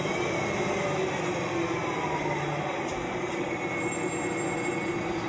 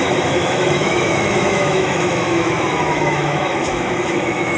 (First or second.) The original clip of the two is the first